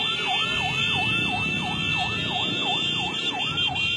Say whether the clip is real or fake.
real